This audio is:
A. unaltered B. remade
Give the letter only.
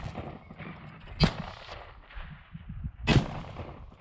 A